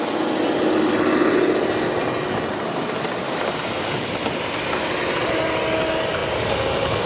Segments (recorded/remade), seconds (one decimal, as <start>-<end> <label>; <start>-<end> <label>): 0.0-7.1 recorded